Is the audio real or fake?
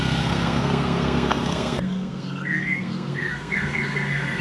fake